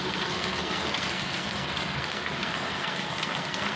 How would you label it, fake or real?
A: fake